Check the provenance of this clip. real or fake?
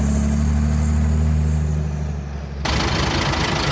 real